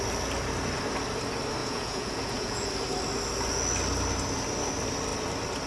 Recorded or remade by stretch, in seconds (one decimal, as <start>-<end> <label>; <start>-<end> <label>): 0.0-1.6 recorded; 1.6-2.7 remade; 2.7-5.7 recorded